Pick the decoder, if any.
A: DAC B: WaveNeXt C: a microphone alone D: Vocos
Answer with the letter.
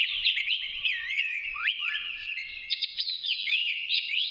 B